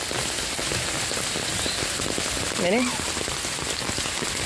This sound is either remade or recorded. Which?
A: recorded